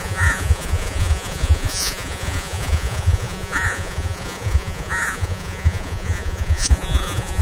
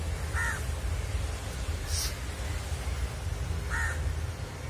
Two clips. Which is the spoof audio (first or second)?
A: first